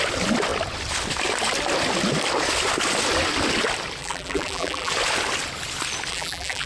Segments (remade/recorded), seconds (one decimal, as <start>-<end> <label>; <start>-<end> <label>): 0.0-4.0 recorded; 4.0-4.9 remade; 4.9-6.1 recorded; 6.1-6.7 remade